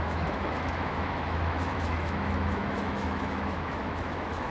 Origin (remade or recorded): remade